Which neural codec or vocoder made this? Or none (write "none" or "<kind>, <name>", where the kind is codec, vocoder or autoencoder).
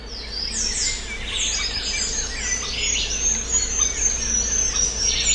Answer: none